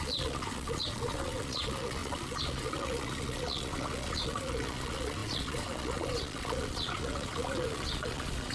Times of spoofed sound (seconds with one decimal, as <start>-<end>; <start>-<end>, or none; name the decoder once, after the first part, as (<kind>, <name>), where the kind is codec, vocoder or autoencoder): 0.0-8.5 (vocoder, Vocos)